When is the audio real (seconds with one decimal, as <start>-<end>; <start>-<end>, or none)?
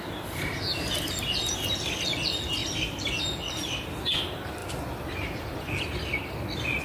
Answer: 0.0-2.6; 3.2-4.6; 6.3-6.8